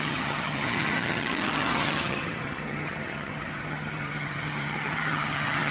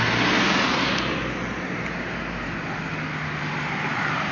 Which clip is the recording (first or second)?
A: second